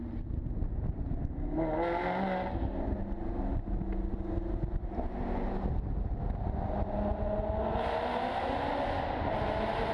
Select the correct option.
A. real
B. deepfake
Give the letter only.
A